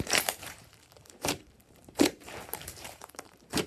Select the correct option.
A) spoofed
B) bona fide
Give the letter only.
A